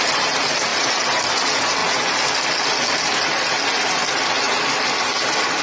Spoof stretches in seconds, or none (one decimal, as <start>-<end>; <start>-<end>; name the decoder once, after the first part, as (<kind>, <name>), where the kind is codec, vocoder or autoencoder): none